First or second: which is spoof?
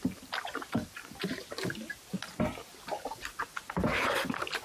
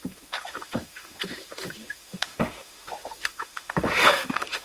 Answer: second